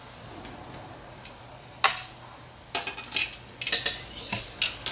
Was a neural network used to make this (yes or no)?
no